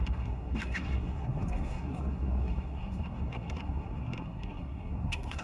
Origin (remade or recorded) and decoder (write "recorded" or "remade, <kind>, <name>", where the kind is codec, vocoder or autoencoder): remade, codec, SNAC